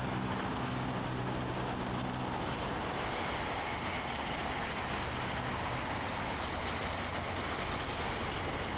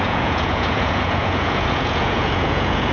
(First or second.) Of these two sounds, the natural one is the first